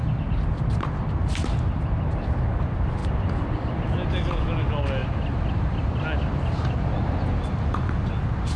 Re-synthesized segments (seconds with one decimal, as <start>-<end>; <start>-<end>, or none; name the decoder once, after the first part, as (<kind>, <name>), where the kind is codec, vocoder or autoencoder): 3.0-3.7 (vocoder, BigVGAN v2); 5.0-6.2